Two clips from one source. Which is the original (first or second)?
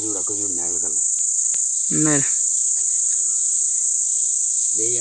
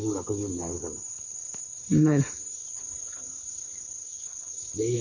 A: first